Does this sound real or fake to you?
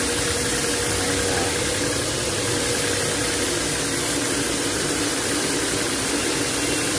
real